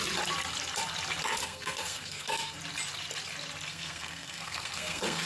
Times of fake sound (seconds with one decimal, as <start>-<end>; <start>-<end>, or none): 1.4-2.6; 3.7-5.3